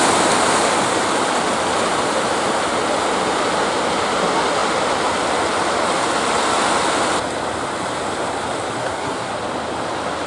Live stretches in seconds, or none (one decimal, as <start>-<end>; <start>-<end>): 0.0-8.8; 9.3-10.3

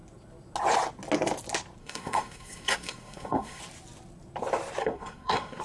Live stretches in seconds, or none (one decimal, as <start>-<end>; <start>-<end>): 0.0-1.8; 3.6-4.8